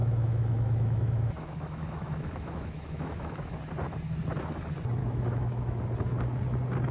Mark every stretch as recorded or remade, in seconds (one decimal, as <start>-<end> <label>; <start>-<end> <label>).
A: 0.0-3.6 remade; 3.6-5.0 recorded; 5.0-5.8 remade; 5.8-6.9 recorded